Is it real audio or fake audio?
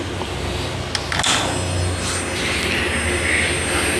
real